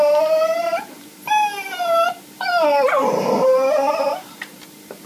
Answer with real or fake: fake